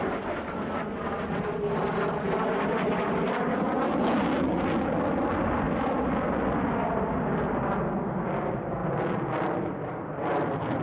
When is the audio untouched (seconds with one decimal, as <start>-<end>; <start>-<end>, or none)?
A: 0.0-10.8

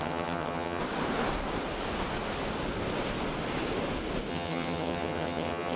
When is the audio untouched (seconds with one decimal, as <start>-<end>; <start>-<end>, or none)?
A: 0.8-4.3

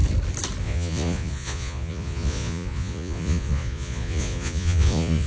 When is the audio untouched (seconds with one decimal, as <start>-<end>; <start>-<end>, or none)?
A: 0.0-0.6

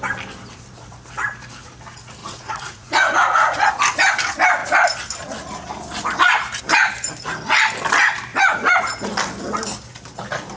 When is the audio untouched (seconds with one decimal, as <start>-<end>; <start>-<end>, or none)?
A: 0.0-2.2; 3.7-8.3; 9.1-10.6

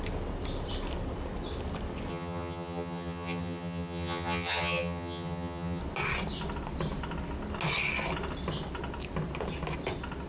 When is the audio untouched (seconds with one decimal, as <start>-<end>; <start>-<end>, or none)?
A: 0.0-2.1; 5.8-10.3